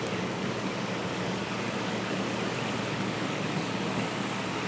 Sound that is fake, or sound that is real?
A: fake